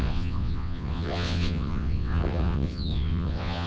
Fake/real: fake